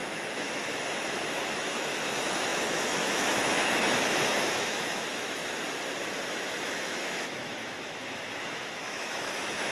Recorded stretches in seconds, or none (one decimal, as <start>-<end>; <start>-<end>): 5.4-6.3